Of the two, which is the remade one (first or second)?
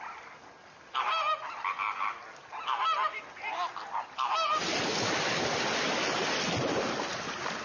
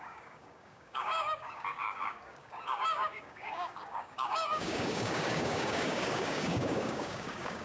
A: second